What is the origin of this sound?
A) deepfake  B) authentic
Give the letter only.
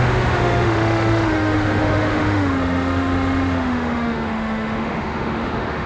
A